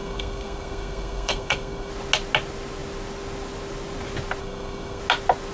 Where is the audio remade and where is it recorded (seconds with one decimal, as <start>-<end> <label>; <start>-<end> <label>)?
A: 0.0-1.9 remade; 1.9-4.4 recorded; 4.4-5.0 remade; 5.0-5.5 recorded